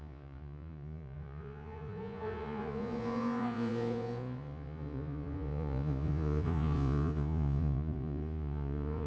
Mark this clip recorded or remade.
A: remade